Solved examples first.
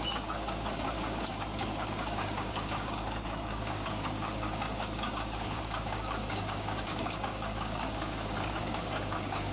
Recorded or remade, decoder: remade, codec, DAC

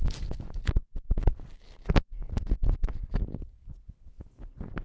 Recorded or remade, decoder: recorded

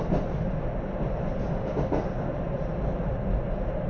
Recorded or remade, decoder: recorded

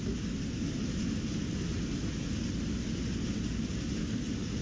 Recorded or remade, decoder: recorded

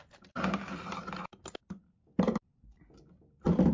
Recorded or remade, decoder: recorded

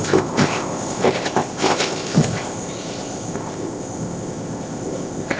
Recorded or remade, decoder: remade, codec, ZipCodec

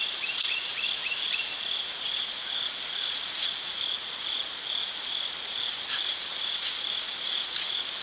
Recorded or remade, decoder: remade, vocoder, Vocos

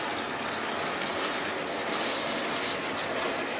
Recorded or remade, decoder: recorded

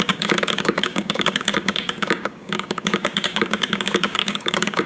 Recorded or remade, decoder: remade, codec, DAC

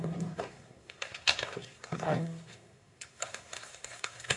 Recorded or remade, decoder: remade, codec, SNAC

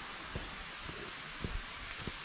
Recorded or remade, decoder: recorded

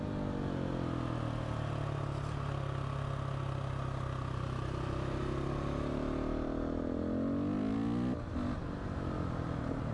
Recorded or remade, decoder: recorded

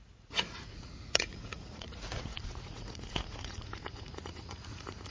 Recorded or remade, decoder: remade, vocoder, Vocos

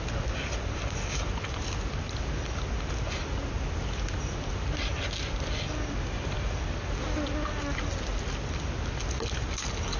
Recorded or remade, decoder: recorded